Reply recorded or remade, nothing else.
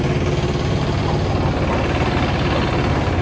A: recorded